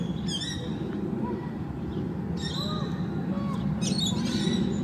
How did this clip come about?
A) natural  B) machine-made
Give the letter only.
A